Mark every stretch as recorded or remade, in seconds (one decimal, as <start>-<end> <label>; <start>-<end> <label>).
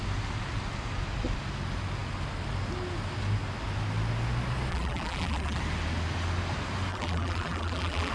0.0-4.7 recorded; 4.7-5.6 remade; 5.6-6.9 recorded; 6.9-8.1 remade